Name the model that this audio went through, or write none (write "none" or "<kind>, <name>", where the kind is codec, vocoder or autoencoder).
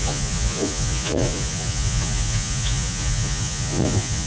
vocoder, Vocos